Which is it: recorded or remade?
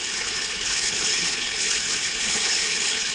remade